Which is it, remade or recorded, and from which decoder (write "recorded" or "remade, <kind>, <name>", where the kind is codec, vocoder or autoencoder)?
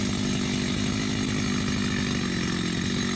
recorded